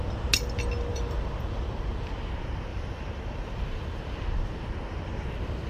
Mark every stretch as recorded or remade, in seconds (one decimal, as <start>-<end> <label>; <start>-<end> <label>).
0.0-0.9 recorded; 0.9-2.1 remade; 2.1-2.7 recorded; 2.7-4.6 remade; 4.6-5.7 recorded